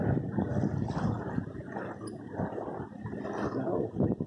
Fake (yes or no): no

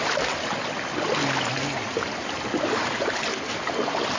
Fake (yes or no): no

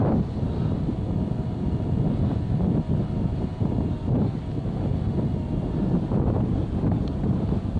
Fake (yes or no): no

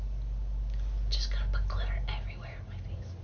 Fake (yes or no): no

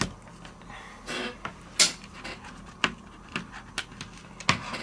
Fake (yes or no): no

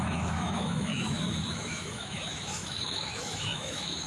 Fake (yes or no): yes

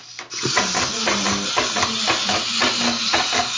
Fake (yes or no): no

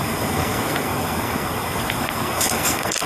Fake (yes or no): yes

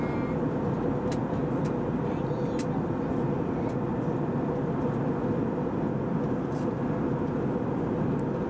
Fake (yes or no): no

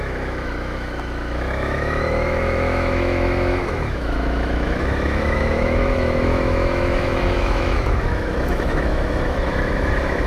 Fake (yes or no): yes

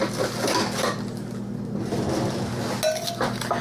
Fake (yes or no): no